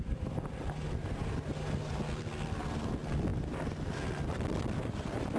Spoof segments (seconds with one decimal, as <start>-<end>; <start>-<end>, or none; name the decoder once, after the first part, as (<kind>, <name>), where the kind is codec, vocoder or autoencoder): 0.0-5.4 (vocoder, BigVGAN v2)